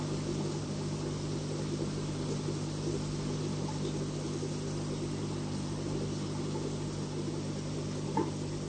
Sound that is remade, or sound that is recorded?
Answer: recorded